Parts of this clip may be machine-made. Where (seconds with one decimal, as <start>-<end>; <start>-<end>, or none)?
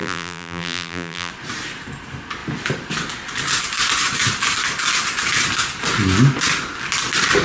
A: 0.0-1.3